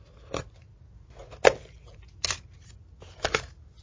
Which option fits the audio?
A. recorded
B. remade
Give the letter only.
A